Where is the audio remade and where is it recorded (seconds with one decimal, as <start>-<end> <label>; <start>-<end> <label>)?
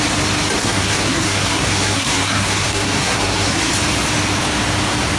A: 0.0-0.6 recorded; 0.6-3.7 remade; 3.7-5.2 recorded